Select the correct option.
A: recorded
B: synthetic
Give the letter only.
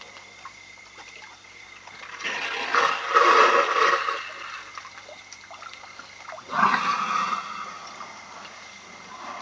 A